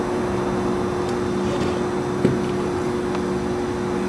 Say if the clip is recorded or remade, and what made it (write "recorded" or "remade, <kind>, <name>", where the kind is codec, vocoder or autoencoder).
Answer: recorded